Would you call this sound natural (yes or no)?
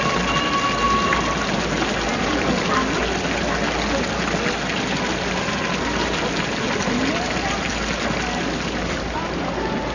yes